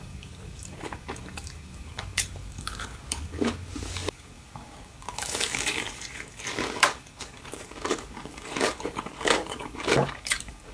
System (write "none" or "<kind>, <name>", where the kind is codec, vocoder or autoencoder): codec, DAC